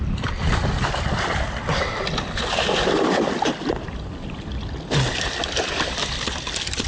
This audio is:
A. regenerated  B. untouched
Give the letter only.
B